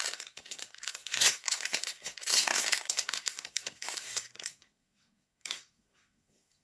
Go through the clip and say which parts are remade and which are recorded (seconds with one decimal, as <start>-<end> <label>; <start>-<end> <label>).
0.0-6.6 remade